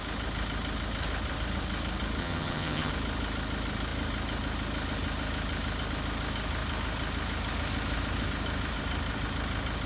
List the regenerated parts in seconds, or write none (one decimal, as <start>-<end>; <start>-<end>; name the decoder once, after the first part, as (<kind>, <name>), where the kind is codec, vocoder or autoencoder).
2.2-2.9 (vocoder, HiFi-GAN)